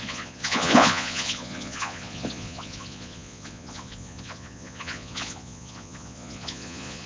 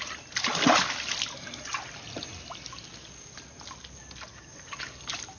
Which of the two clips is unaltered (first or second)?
second